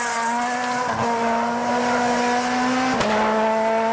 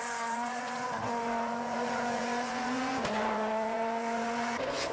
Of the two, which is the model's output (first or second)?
second